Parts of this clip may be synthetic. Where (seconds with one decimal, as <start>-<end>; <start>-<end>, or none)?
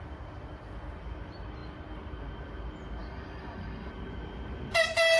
3.0-3.9